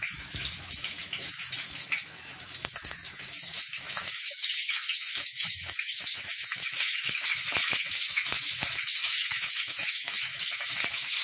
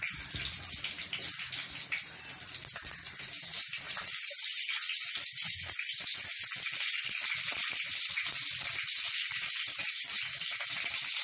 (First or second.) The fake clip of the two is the first